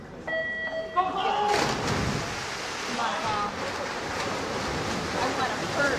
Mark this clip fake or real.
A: real